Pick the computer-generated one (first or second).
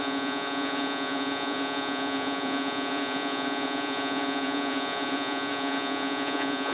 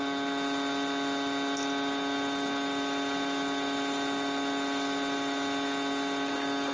first